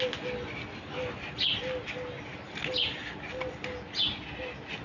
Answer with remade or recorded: recorded